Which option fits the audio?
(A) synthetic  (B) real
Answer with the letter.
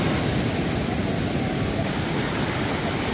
B